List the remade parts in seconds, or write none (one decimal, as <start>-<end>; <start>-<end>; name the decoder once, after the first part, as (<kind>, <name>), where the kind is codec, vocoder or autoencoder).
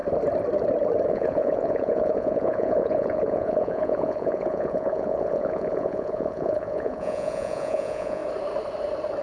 1.1-8.2 (vocoder, Vocos)